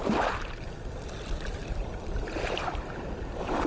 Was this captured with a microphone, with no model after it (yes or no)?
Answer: yes